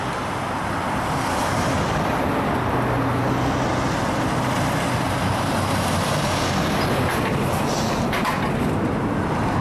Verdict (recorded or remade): recorded